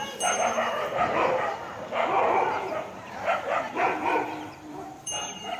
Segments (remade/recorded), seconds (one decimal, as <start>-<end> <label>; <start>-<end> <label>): 0.0-0.7 recorded; 0.7-5.6 remade